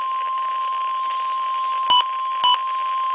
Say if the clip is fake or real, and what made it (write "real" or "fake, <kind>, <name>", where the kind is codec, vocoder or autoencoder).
real